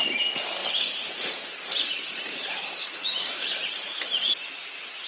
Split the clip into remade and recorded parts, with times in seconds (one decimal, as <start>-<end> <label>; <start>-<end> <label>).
0.0-0.6 recorded; 0.6-3.7 remade; 3.7-5.1 recorded